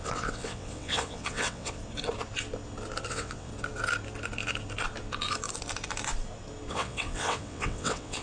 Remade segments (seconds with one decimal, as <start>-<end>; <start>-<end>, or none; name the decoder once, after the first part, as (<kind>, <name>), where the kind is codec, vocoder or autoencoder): 0.0-1.8 (vocoder, WaveNeXt); 3.1-3.5; 6.7-8.2